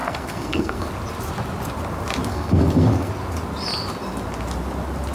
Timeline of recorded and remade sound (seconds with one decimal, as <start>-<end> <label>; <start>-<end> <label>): 0.0-0.9 remade; 0.9-2.3 recorded; 2.3-3.1 remade; 3.1-5.1 recorded